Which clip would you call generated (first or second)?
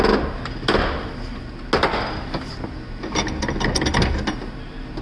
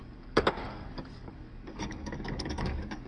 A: second